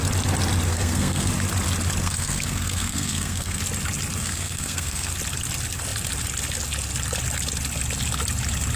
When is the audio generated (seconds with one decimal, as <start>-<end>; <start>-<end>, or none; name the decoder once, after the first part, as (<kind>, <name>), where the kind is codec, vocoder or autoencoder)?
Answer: 0.7-1.3 (codec, SNAC); 2.0-3.6; 4.2-5.1